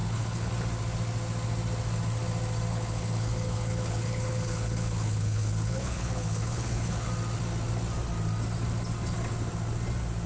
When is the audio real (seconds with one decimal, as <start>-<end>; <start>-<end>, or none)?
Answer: 0.5-2.7; 7.1-10.3